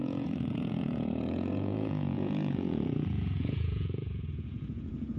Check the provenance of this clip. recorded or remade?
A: remade